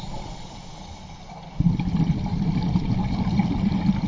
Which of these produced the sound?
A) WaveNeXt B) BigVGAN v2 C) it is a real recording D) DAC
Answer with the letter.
C